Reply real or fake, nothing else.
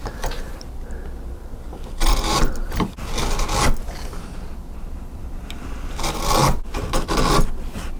real